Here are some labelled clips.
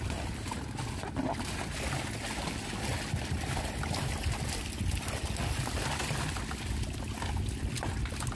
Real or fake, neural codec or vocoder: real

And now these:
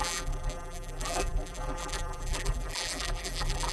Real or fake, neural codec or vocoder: fake, vocoder, BigVGAN v2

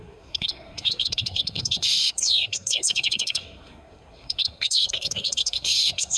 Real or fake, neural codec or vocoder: fake, codec, SNAC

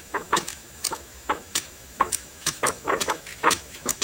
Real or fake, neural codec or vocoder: fake, autoencoder, DAC-VAE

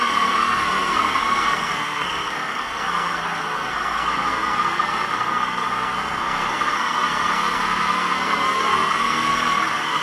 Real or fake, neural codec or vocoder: fake, codec, SNAC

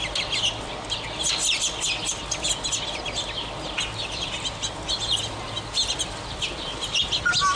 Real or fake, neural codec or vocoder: real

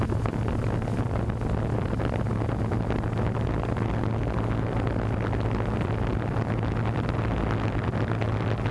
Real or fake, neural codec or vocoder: real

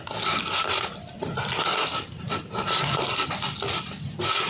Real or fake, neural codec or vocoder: real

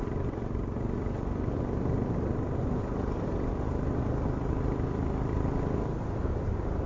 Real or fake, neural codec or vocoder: real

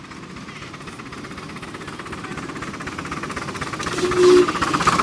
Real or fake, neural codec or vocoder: real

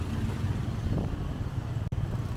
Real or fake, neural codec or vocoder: real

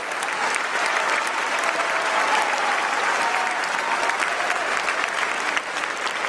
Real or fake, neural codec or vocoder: real